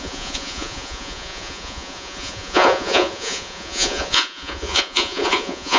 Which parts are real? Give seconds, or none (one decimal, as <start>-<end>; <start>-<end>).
none

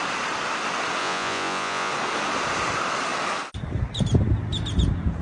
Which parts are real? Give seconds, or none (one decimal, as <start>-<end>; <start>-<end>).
0.0-1.0; 1.9-5.2

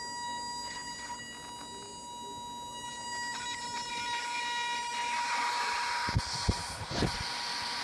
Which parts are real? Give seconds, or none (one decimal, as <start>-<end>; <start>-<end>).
0.0-7.8

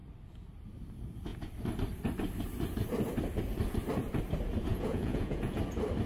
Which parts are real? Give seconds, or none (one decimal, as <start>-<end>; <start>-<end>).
0.0-4.7; 5.6-6.1

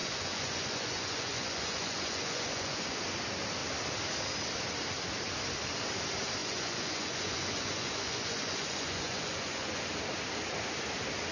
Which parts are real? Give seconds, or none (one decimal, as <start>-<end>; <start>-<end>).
3.0-6.4; 9.8-11.3